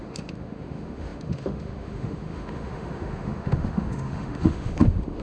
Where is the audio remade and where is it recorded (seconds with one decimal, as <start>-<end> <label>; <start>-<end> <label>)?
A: 0.0-5.2 remade